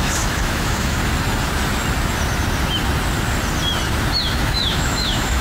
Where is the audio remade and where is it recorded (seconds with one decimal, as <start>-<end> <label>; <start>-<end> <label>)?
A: 0.0-1.0 remade; 1.0-4.2 recorded; 4.2-5.4 remade